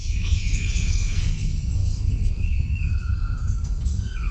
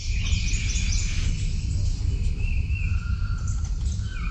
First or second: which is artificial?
first